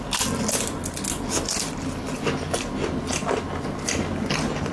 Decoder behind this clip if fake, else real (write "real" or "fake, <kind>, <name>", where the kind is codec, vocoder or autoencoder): real